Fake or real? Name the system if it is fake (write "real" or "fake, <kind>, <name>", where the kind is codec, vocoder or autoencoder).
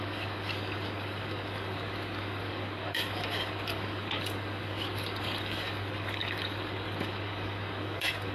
fake, codec, DAC